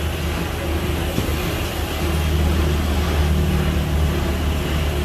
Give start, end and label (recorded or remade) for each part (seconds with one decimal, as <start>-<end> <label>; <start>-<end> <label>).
0.0-5.0 recorded